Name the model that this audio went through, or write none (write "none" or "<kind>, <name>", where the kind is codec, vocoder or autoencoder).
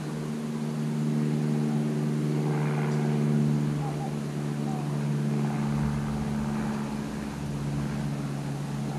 none